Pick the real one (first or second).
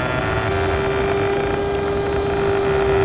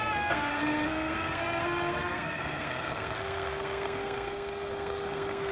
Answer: first